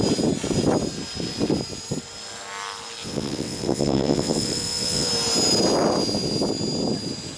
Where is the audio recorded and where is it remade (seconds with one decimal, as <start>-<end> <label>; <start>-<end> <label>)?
0.0-3.0 recorded; 3.0-5.1 remade; 5.1-7.4 recorded